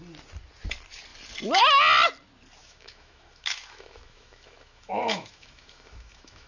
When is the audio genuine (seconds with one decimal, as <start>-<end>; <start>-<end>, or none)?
0.0-2.6